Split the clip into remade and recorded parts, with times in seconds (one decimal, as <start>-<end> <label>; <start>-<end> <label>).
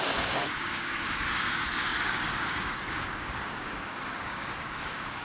0.0-5.2 remade